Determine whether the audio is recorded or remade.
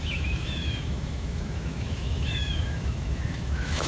remade